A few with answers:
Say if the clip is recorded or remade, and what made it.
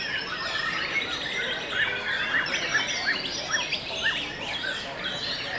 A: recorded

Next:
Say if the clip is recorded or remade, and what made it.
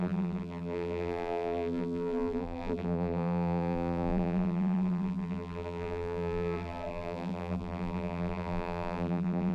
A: remade, vocoder, BigVGAN v2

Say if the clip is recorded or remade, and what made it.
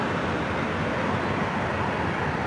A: recorded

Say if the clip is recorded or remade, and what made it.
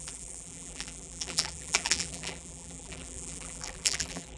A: remade, vocoder, BigVGAN v2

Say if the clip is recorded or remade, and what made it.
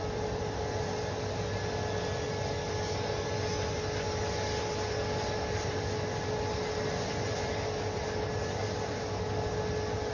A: recorded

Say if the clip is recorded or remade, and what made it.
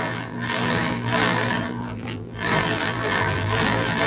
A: remade, vocoder, BigVGAN v2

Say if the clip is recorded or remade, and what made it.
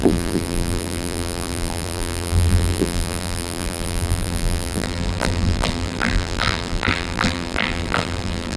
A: remade, vocoder, BigVGAN v2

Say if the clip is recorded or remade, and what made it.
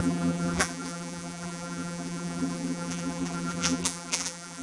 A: remade, vocoder, BigVGAN v2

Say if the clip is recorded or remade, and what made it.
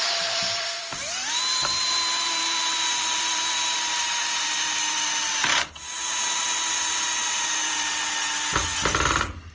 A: remade, vocoder, BigVGAN v2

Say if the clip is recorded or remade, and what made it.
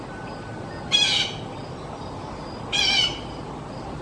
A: recorded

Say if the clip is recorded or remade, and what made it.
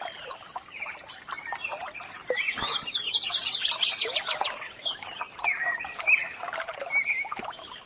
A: remade, vocoder, BigVGAN v2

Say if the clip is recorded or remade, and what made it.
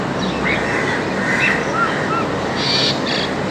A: recorded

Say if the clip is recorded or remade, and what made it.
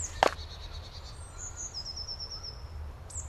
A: recorded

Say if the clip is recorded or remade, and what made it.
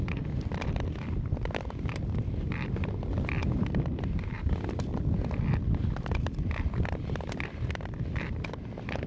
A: recorded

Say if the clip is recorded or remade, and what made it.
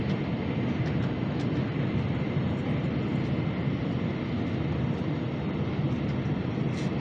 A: recorded